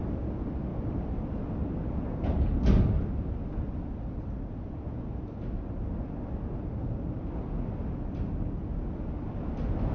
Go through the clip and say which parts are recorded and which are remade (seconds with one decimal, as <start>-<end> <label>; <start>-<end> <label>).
0.0-0.7 recorded; 0.7-1.4 remade; 1.4-9.9 recorded